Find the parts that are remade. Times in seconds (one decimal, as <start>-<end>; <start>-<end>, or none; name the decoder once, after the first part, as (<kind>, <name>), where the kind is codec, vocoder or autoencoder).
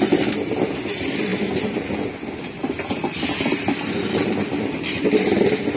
none